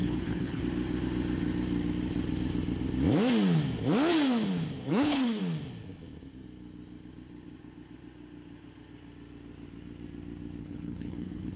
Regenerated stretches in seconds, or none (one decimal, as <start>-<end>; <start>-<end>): 0.0-0.6; 4.9-5.4; 10.6-11.6